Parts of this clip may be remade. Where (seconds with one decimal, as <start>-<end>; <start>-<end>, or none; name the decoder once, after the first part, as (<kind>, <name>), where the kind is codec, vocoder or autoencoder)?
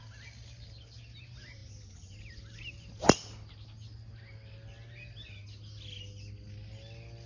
none